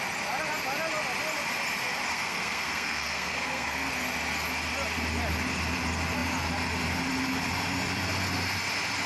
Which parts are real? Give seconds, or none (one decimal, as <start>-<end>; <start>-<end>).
0.0-2.1; 3.9-9.1